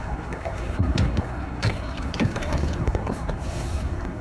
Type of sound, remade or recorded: remade